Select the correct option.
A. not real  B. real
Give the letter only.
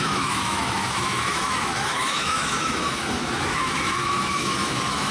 A